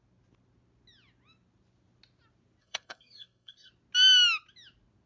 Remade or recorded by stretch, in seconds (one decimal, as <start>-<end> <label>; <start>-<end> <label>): 0.0-2.6 recorded; 2.6-3.7 remade; 3.7-5.1 recorded